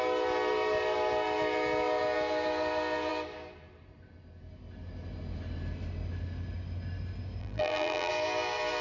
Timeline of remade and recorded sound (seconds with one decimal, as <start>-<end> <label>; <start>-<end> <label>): 0.0-7.4 recorded; 7.4-8.1 remade; 8.1-8.8 recorded